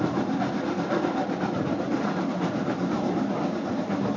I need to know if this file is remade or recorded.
recorded